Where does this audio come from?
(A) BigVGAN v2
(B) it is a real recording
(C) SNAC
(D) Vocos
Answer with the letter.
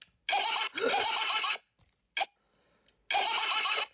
B